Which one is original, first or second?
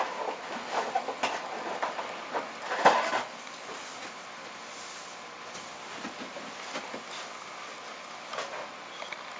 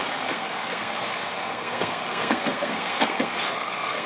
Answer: first